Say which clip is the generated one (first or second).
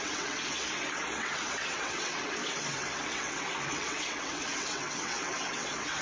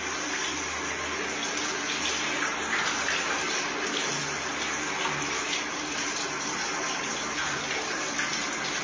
first